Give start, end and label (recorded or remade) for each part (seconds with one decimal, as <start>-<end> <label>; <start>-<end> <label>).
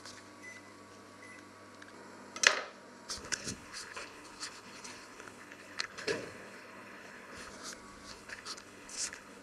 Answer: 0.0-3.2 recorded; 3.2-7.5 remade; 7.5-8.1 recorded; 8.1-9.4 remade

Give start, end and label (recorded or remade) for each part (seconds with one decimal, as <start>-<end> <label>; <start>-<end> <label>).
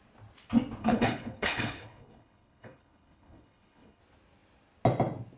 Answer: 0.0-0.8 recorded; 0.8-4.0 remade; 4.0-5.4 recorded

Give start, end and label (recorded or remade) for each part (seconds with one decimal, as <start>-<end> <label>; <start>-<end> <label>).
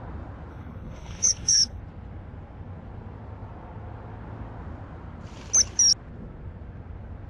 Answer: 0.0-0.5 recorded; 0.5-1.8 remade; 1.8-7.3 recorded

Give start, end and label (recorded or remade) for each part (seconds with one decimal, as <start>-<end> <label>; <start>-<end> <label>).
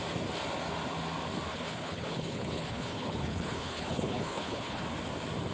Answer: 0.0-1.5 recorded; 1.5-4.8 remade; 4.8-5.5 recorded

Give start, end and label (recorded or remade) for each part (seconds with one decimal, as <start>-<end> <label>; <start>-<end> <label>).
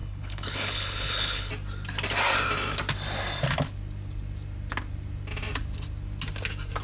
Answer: 0.0-1.5 remade; 1.5-6.8 recorded